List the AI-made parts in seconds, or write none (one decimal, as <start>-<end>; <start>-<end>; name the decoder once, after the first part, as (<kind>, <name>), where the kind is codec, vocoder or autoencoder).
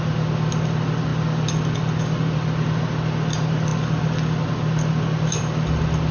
none